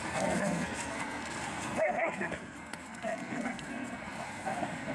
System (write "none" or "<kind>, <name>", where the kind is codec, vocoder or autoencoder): codec, SNAC